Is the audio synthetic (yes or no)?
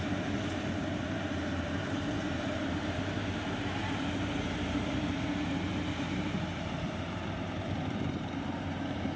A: yes